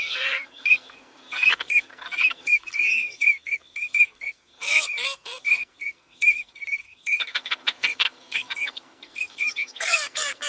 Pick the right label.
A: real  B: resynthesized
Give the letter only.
B